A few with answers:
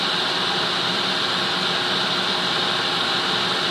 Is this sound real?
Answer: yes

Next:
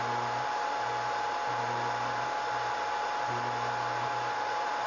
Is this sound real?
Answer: yes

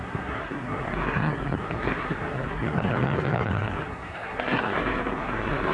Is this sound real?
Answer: no